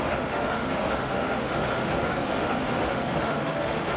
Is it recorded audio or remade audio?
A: remade